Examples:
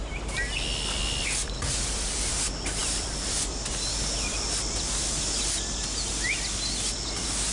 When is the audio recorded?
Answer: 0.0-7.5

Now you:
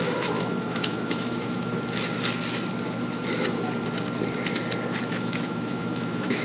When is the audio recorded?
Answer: 1.7-5.1

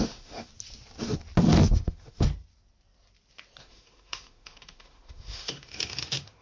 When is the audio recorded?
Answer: 0.5-1.7; 2.3-3.6

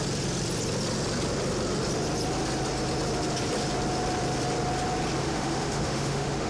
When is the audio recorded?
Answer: 0.0-5.2